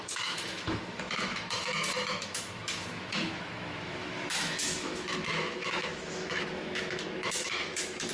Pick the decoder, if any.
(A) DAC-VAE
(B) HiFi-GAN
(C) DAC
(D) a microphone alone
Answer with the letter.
A